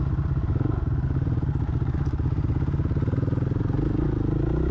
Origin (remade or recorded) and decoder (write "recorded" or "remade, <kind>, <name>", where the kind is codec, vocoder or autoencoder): recorded